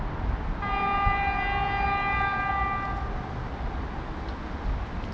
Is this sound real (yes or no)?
yes